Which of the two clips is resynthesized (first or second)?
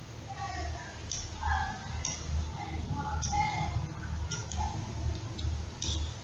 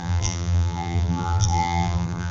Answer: second